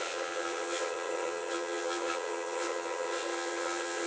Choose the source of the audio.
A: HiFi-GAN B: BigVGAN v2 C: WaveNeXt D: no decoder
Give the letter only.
A